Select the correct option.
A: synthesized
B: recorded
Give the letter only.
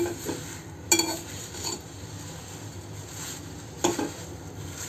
B